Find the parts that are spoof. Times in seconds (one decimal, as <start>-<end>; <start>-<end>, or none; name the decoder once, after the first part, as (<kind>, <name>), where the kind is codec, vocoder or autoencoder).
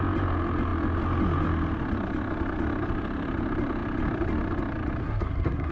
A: 5.0-5.7 (codec, SNAC)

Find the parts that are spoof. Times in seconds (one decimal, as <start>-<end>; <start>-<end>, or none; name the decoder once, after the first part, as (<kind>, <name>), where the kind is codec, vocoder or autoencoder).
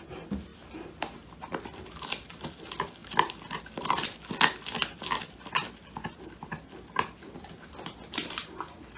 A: none